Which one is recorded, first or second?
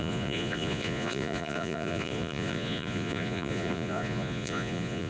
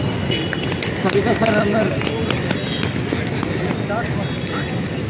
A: second